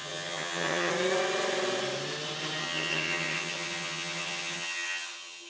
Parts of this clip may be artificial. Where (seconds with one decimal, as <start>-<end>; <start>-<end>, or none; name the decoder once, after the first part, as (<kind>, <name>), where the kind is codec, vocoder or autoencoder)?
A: 0.0-0.9 (vocoder, HiFi-GAN); 2.6-5.5

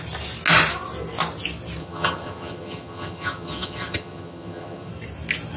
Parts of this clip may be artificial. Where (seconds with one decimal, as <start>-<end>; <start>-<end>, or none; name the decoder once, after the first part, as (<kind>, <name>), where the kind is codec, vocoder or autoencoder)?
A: 1.8-4.9 (vocoder, HiFi-GAN)